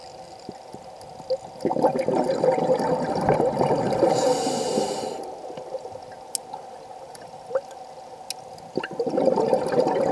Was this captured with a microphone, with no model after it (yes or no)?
yes